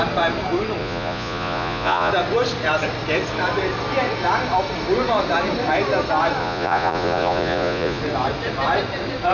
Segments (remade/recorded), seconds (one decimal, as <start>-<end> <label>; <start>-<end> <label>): 0.0-0.8 recorded; 0.8-2.1 remade; 2.1-6.4 recorded; 6.4-8.0 remade; 8.0-9.3 recorded